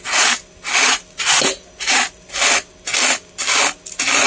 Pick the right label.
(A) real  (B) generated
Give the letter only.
A